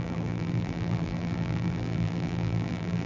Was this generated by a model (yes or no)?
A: yes